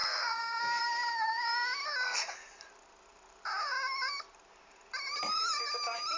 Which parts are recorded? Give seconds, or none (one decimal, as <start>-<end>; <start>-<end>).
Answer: 0.8-6.2